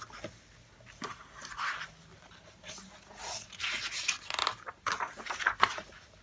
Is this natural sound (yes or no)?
yes